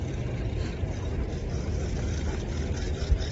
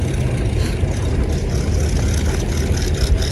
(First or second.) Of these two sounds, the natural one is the second